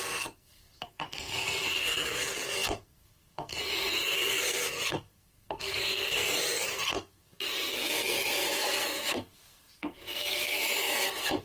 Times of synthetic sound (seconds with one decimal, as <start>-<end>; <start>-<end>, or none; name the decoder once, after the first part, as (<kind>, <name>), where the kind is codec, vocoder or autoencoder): 0.0-11.4 (codec, SNAC)